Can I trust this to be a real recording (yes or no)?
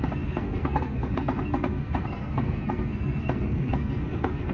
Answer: no